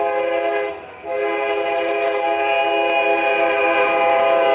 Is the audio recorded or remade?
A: recorded